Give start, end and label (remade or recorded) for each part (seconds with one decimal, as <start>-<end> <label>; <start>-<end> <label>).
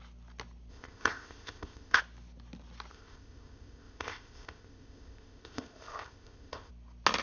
0.0-0.7 recorded; 0.7-2.0 remade; 2.0-2.9 recorded; 2.9-6.7 remade; 6.7-7.2 recorded